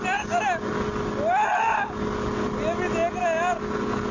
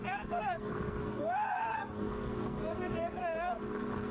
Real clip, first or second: first